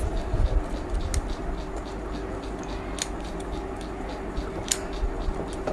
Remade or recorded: recorded